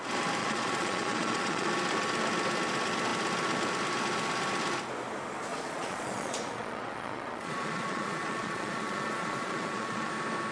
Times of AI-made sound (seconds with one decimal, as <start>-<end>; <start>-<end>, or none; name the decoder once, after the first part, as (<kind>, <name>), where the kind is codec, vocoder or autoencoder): 0.4-1.7 (vocoder, Vocos); 5.5-10.1